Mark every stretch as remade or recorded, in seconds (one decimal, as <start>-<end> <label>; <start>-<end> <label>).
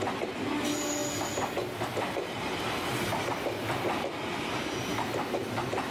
0.0-5.9 recorded